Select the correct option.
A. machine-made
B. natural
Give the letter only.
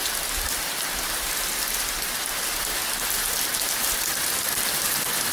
B